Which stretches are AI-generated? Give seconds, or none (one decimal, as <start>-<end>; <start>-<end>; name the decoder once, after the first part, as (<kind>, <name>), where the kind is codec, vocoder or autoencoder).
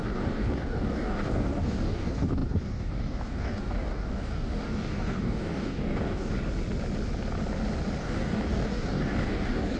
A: 0.0-6.3 (codec, DAC); 8.0-9.8